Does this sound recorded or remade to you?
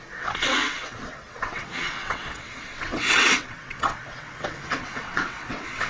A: remade